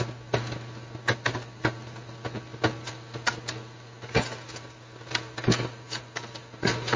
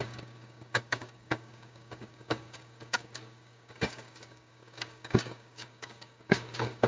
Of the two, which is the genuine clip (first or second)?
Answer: first